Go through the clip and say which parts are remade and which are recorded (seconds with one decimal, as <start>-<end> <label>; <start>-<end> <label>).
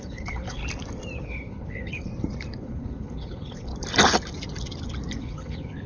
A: 0.0-0.6 remade; 0.6-1.2 recorded; 1.2-2.1 remade; 2.1-2.6 recorded; 2.6-3.7 remade; 3.7-5.2 recorded; 5.2-5.9 remade